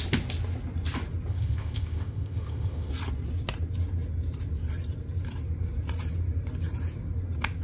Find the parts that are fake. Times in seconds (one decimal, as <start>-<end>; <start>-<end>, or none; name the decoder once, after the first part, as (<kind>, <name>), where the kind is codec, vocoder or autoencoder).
1.3-2.9 (codec, ZipCodec)